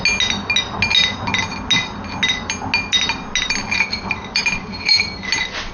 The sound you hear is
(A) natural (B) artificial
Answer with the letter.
A